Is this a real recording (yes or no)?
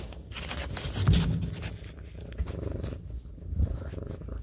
yes